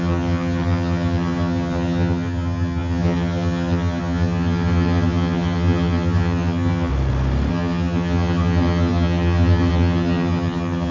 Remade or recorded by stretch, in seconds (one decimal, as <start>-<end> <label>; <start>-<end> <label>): 0.0-6.9 remade; 6.9-7.5 recorded; 7.5-10.9 remade